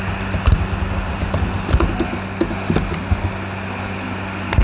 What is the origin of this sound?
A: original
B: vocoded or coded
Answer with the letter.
A